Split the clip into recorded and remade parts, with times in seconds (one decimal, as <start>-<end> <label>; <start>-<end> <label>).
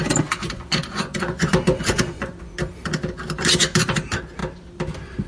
0.0-0.4 recorded; 0.4-2.4 remade; 2.4-5.3 recorded